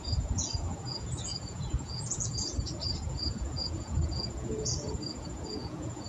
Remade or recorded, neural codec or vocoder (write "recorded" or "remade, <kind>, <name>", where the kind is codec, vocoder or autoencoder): remade, vocoder, Vocos